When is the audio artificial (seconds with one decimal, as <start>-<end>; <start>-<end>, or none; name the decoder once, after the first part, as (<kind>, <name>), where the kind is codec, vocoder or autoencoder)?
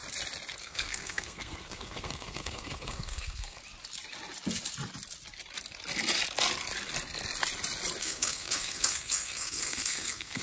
0.6-3.6 (codec, SNAC); 8.0-10.4